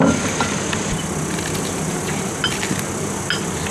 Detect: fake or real real